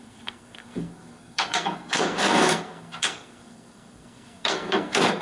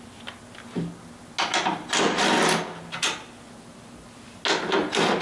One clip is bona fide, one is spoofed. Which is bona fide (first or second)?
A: second